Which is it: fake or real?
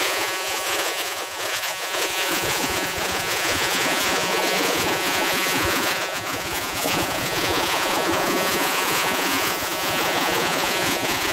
fake